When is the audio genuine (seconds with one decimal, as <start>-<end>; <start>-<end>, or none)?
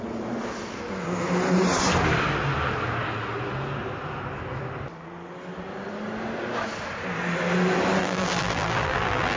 0.0-8.0